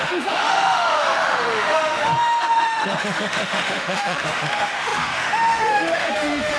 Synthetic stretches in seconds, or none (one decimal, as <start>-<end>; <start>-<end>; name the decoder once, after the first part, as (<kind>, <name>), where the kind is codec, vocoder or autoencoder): 0.0-6.6 (autoencoder, DAC-VAE)